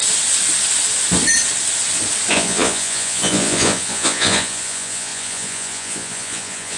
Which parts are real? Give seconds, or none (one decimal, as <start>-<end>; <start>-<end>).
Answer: 0.0-2.3